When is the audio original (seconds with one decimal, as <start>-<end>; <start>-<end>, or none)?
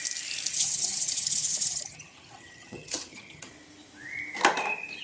0.0-0.5; 3.5-5.0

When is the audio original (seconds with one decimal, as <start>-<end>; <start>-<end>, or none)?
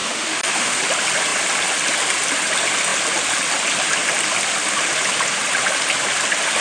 0.8-6.6